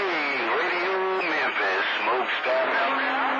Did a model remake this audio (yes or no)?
no